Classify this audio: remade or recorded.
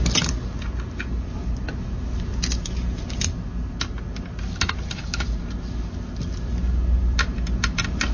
recorded